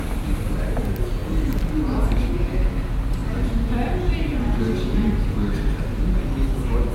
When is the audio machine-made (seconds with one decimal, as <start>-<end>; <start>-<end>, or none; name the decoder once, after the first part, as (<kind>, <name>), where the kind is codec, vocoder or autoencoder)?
none